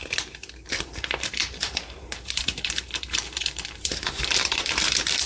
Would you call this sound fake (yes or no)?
yes